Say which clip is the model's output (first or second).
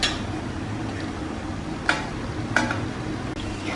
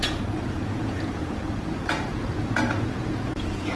second